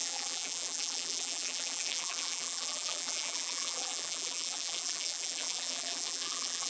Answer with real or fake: fake